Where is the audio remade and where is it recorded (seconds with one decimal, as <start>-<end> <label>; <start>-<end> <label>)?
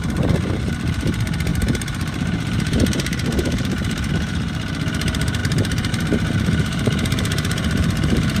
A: 0.0-8.4 remade